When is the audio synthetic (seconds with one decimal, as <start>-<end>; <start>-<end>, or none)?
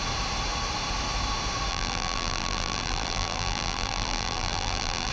1.7-5.1